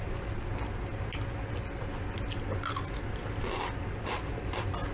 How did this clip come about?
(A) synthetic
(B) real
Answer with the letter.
B